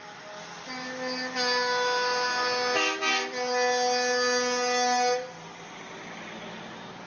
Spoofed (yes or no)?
no